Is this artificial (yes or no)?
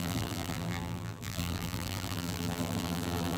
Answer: yes